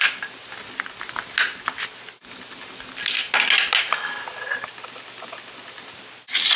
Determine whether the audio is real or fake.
real